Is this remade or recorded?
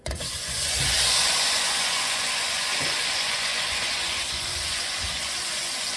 remade